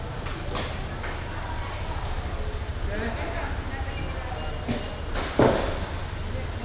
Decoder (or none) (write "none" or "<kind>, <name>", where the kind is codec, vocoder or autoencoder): none